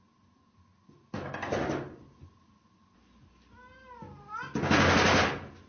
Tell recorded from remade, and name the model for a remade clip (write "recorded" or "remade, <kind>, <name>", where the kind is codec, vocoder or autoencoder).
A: recorded